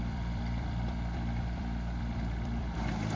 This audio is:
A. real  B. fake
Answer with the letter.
B